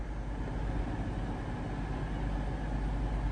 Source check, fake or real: real